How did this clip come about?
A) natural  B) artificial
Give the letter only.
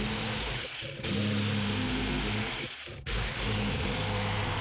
A